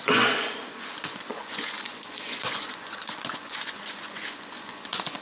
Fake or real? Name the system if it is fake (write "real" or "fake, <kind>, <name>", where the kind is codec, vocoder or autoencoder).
fake, vocoder, Vocos